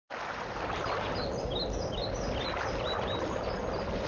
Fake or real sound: real